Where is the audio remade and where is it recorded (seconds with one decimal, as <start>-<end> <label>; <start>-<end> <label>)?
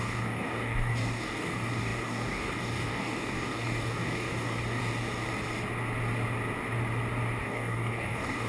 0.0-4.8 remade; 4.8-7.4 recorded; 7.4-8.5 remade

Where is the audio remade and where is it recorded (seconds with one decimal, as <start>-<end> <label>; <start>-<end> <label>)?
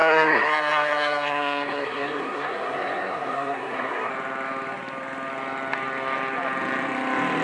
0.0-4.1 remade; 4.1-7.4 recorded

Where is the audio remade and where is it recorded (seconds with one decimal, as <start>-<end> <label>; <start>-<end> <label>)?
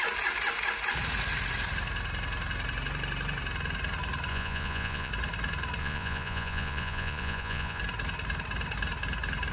0.0-4.3 recorded; 4.3-5.1 remade; 5.1-5.8 recorded; 5.8-7.8 remade; 7.8-9.5 recorded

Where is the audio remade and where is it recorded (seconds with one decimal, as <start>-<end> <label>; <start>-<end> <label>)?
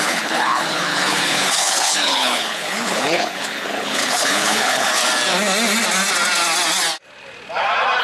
0.0-5.0 remade; 5.0-8.0 recorded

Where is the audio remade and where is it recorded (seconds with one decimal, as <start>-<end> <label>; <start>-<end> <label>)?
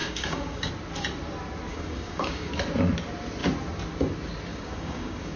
0.0-0.7 remade; 0.7-1.7 recorded; 1.7-2.5 remade; 2.5-4.5 recorded; 4.5-5.4 remade